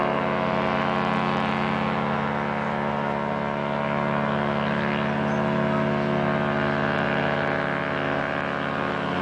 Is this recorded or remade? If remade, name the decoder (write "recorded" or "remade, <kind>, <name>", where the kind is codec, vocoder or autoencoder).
recorded